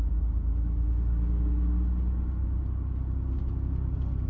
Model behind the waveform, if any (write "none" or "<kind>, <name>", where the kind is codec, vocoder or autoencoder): none